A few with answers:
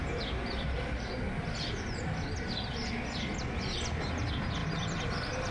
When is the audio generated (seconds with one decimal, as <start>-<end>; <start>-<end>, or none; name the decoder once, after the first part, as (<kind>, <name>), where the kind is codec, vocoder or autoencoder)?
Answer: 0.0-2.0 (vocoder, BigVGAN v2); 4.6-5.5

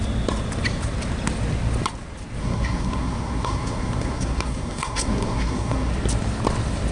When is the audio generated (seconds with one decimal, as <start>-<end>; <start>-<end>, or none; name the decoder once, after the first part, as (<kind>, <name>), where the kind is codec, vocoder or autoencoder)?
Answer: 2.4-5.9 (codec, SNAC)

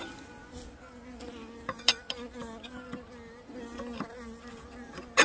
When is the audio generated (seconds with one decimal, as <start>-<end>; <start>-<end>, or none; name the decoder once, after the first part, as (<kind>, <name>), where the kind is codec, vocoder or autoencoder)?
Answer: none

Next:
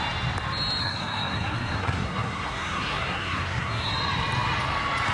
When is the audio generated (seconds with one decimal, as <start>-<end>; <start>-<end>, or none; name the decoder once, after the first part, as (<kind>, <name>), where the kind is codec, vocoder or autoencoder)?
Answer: 0.8-3.9 (codec, SNAC)

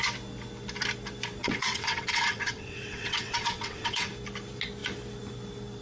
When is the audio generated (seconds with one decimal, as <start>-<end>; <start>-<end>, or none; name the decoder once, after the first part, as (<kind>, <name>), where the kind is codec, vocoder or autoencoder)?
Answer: 1.4-4.1 (vocoder, WaveNeXt)

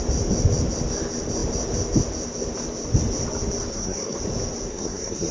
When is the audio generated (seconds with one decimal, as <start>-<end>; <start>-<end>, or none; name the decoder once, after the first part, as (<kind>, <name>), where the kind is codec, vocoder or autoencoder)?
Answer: 3.7-4.2 (codec, SNAC); 4.7-5.3